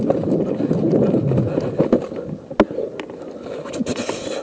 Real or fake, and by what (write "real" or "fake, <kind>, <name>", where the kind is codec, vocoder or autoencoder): real